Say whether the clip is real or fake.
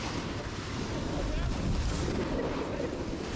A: real